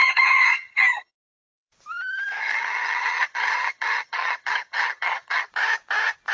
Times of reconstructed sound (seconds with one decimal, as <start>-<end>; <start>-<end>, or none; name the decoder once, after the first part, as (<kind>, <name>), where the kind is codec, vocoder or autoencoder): 0.0-1.1 (vocoder, HiFi-GAN); 2.4-5.5